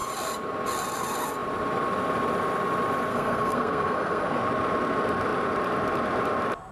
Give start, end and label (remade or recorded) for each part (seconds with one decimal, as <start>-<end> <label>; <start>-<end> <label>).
0.0-3.1 recorded; 3.1-4.4 remade; 4.4-6.7 recorded